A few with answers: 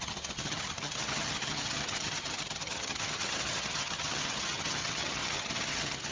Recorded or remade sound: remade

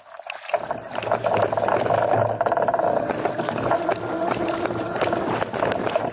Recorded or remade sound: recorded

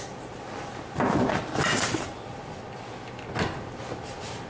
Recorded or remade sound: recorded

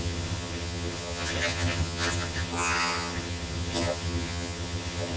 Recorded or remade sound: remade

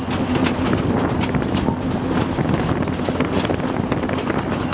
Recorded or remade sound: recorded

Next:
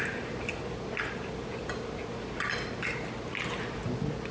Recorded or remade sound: recorded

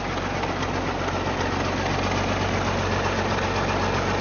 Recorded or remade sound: recorded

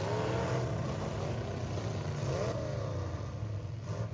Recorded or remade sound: recorded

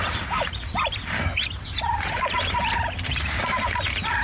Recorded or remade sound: recorded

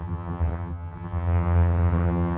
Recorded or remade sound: remade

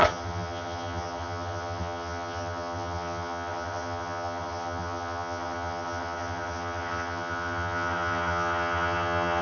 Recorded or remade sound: remade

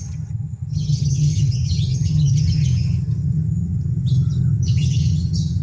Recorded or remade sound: remade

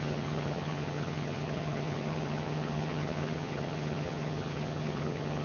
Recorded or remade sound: remade